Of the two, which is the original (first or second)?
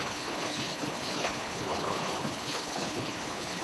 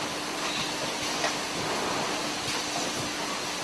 second